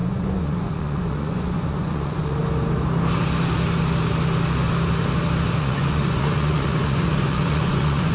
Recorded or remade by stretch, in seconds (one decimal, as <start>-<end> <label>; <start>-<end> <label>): 0.0-2.4 remade; 2.4-5.6 recorded; 5.6-8.1 remade